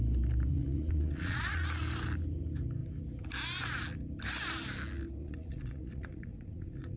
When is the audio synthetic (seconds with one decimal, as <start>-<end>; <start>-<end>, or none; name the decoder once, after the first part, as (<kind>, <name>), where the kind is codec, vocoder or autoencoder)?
0.5-1.6 (vocoder, Vocos); 5.2-7.0